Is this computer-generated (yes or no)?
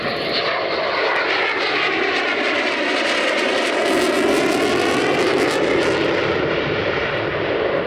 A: no